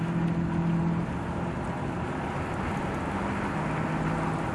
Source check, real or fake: real